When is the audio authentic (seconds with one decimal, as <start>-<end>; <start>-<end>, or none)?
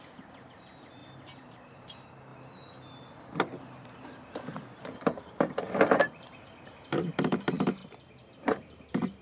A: none